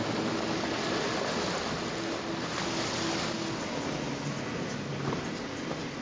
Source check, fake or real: real